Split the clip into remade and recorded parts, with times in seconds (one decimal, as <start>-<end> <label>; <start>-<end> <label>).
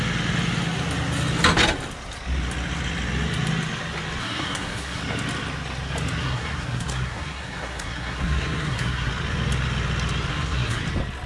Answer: 0.0-4.2 recorded; 4.2-5.0 remade; 5.0-6.2 recorded; 6.2-9.1 remade; 9.1-10.3 recorded; 10.3-10.8 remade; 10.8-11.3 recorded